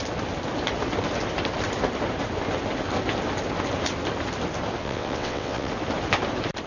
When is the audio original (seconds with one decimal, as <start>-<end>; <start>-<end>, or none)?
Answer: 0.0-4.8; 5.7-6.7